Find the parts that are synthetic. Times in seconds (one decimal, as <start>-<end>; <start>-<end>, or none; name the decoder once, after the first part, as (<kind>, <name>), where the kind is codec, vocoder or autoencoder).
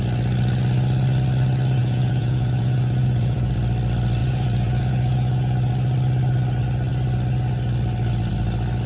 1.8-3.5 (vocoder, Vocos); 4.2-5.7